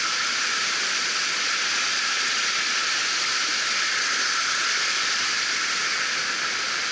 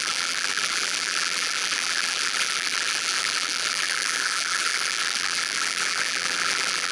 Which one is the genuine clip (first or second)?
first